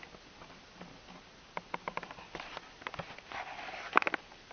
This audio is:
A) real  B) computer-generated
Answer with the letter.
A